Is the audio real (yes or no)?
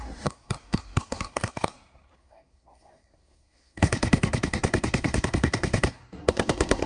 no